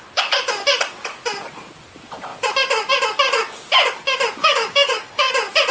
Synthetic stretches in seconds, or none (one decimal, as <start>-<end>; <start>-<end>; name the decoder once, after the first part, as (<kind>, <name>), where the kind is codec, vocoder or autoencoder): 4.4-5.3 (codec, DAC)